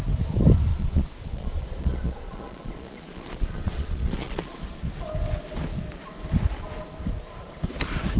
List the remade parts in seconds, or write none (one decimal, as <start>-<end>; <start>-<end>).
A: 0.7-4.6